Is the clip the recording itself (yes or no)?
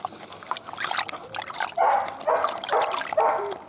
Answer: yes